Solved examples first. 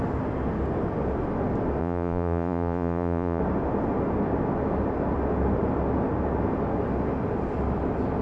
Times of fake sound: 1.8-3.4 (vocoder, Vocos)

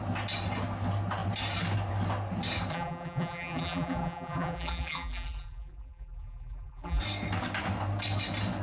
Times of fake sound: 2.7-7.0 (vocoder, BigVGAN v2)

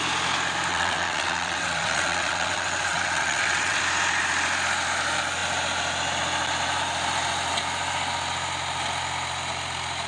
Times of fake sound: 0.7-3.8 (vocoder, WaveNeXt)

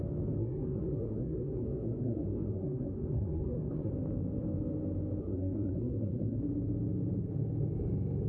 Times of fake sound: 0.4-3.9 (codec, SNAC); 5.2-6.4